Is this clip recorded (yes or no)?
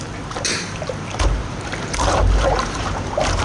no